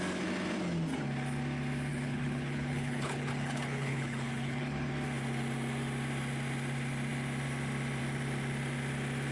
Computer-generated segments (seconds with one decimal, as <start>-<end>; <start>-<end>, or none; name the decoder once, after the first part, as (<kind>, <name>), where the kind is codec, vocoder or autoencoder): 1.9-4.9 (codec, HILCodec)